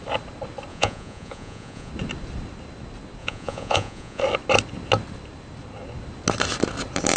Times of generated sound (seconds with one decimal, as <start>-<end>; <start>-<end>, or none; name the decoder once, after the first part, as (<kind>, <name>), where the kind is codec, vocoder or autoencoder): 0.7-1.9 (vocoder, Vocos); 3.2-4.2